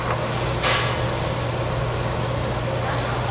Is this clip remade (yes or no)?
no